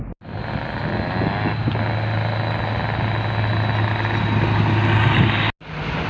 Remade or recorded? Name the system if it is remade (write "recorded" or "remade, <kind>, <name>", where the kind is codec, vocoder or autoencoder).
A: recorded